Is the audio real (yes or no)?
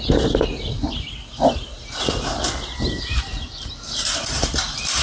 yes